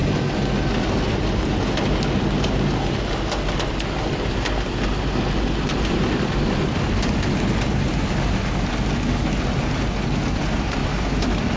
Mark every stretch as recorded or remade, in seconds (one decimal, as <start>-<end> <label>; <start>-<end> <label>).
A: 0.0-11.6 recorded